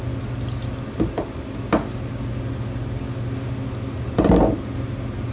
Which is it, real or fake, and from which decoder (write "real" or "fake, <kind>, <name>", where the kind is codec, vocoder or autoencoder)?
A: real